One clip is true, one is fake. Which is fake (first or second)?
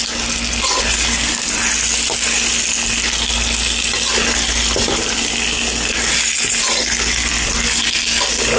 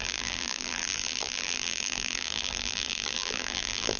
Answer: second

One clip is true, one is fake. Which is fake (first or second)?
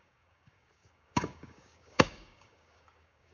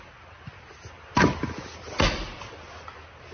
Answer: first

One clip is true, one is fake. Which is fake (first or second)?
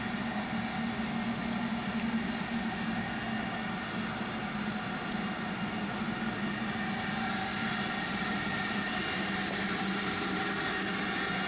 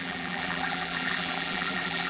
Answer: second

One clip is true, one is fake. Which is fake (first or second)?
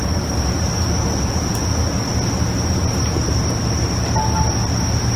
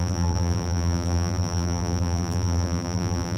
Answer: second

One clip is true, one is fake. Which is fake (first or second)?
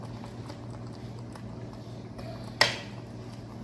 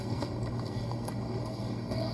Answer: second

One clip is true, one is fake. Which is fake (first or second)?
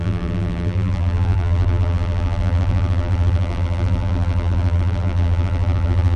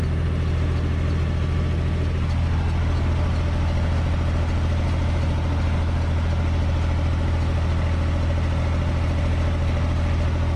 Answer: first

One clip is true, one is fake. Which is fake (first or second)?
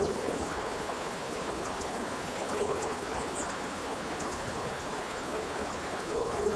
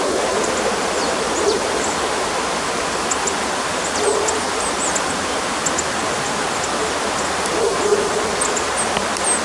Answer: first